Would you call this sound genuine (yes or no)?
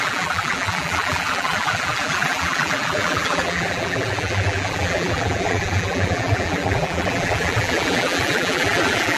no